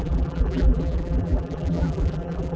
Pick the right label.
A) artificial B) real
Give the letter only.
A